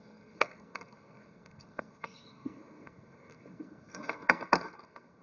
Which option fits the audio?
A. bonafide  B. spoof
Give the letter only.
B